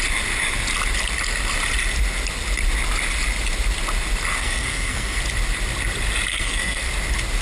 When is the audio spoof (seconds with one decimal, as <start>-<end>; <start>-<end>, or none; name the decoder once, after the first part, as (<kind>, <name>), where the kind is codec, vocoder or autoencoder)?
4.3-5.2 (codec, SNAC); 6.3-6.9